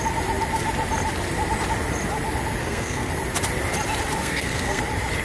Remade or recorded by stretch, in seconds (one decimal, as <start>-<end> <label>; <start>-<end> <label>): 0.0-2.6 recorded; 2.6-3.1 remade; 3.1-4.2 recorded; 4.2-4.8 remade; 4.8-5.2 recorded